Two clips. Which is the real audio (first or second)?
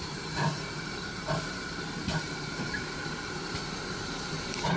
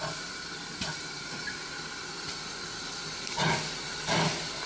second